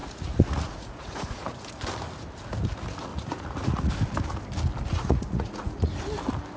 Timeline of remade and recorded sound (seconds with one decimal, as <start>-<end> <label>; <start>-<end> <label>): 0.0-1.7 remade; 1.7-3.1 recorded; 3.1-3.9 remade; 3.9-4.9 recorded; 4.9-5.9 remade; 5.9-6.6 recorded

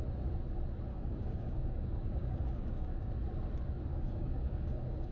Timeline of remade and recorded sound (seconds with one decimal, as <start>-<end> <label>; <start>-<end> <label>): 0.0-0.9 recorded; 0.9-3.1 remade; 3.1-3.9 recorded; 3.9-5.1 remade

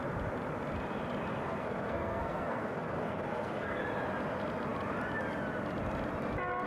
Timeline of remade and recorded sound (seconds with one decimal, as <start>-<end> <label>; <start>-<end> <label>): 0.0-1.3 recorded; 1.3-3.8 remade; 3.8-6.7 recorded

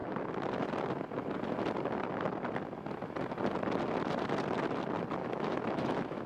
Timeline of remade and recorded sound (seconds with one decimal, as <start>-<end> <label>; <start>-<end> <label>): 0.0-5.2 recorded; 5.2-6.3 remade

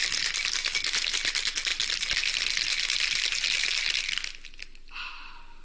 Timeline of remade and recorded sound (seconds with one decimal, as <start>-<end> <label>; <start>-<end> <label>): 0.0-5.6 recorded

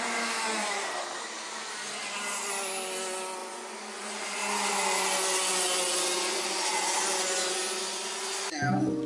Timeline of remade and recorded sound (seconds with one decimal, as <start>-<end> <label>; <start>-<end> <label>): 0.0-3.4 recorded; 3.4-4.2 remade; 4.2-9.1 recorded

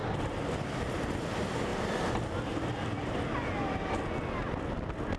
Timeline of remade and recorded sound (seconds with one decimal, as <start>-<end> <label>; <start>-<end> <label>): 0.0-1.2 remade; 1.2-1.7 recorded; 1.7-2.4 remade; 2.4-5.2 recorded